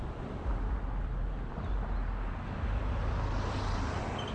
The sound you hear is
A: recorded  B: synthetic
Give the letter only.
A